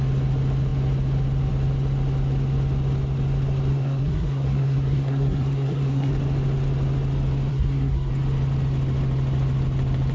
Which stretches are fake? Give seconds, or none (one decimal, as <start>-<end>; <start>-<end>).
3.7-6.1; 7.5-8.1